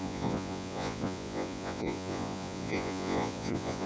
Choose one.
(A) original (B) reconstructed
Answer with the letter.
B